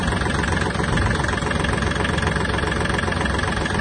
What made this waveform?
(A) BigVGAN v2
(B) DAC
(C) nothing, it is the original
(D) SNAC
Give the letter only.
C